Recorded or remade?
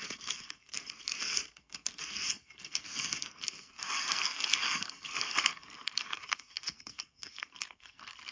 remade